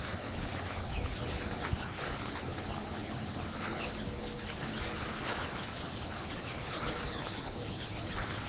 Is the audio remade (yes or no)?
yes